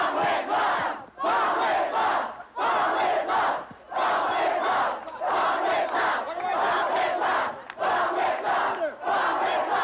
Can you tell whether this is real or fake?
real